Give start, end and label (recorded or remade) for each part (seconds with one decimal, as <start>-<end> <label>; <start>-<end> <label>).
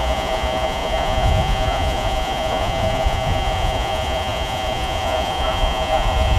0.0-6.4 remade